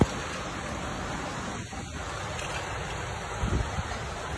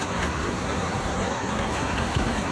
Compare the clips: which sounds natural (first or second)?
first